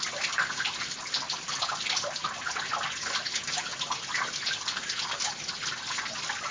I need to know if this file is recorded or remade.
recorded